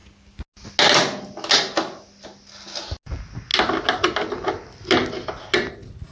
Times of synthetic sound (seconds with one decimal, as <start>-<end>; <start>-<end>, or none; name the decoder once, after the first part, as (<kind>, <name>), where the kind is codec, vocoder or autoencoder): none